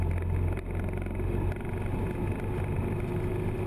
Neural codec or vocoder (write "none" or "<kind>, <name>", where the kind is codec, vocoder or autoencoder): none